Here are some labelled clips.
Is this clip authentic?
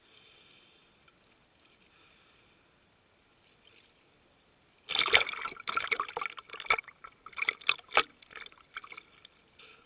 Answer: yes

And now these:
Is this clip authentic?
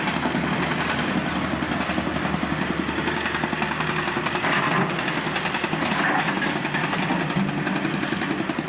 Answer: yes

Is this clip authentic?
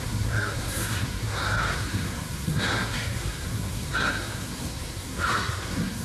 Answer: no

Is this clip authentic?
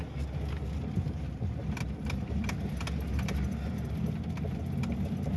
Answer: yes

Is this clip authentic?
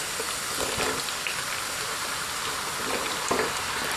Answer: yes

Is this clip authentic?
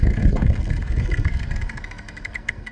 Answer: no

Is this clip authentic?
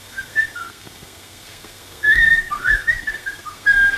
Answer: no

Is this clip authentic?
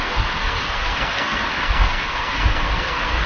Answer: no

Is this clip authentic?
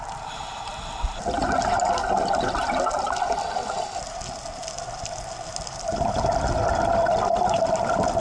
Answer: yes